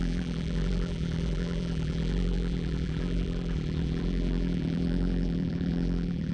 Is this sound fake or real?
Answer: fake